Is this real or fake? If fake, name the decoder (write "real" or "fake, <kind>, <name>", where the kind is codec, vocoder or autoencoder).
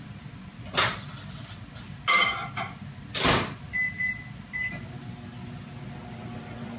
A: real